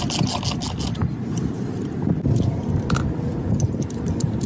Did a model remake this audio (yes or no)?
no